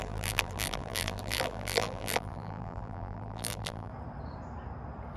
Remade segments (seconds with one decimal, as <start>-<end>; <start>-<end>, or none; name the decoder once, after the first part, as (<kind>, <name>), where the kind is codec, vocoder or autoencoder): 0.0-3.9 (vocoder, BigVGAN v2)